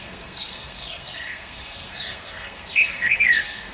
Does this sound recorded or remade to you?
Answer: remade